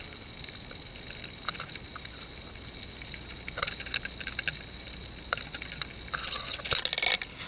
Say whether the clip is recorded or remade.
recorded